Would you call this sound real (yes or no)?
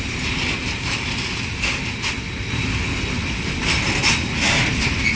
yes